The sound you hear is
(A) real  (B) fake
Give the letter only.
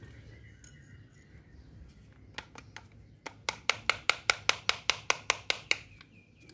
A